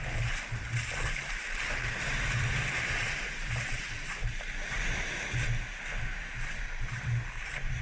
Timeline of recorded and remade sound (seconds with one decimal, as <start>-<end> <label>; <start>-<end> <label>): 0.0-7.8 recorded